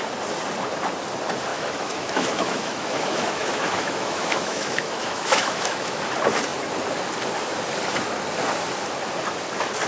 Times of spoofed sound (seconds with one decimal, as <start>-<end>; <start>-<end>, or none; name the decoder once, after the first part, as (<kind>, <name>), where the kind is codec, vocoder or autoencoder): 1.5-6.0 (autoencoder, DAC-VAE)